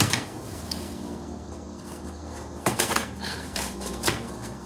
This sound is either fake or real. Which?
fake